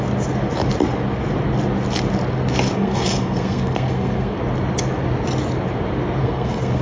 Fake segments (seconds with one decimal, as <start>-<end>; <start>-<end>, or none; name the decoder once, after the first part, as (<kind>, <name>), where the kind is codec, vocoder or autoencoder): 2.7-4.4 (codec, SNAC); 6.2-6.8